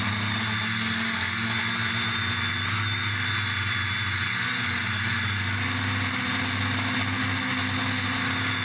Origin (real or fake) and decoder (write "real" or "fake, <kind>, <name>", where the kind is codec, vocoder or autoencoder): real